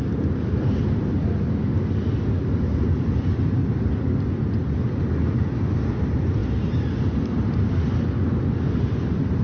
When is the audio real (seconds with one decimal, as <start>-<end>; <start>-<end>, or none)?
0.0-9.4